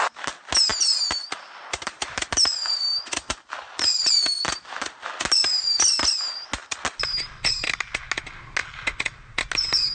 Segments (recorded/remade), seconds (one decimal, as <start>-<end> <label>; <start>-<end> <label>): 0.0-0.7 recorded; 0.7-5.1 remade; 5.1-9.9 recorded